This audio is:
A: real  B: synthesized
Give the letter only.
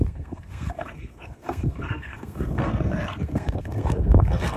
B